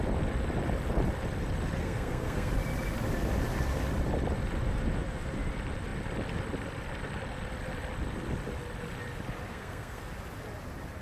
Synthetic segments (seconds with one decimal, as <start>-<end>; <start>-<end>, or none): 1.8-2.5; 9.5-10.0